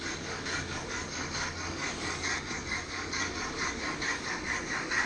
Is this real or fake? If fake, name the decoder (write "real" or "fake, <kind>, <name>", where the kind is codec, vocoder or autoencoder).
fake, codec, DAC